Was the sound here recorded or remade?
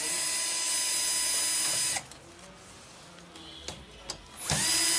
recorded